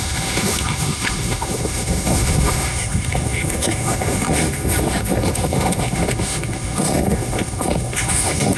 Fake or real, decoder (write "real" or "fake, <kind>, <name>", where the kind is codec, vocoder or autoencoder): fake, autoencoder, DAC-VAE